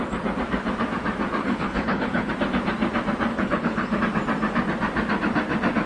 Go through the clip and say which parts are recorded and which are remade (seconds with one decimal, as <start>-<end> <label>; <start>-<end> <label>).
0.0-1.4 recorded; 1.4-2.3 remade; 2.3-3.3 recorded; 3.3-4.0 remade; 4.0-5.9 recorded